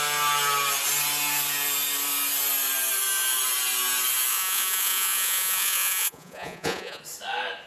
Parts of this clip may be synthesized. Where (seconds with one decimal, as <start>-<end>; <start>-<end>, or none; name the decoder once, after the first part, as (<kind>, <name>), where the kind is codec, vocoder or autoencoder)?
4.3-7.0 (vocoder, Vocos)